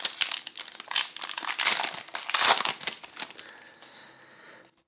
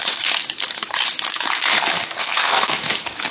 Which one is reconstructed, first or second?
second